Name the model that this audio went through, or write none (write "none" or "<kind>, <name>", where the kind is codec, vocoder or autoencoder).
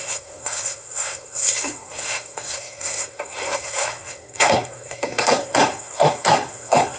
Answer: codec, SNAC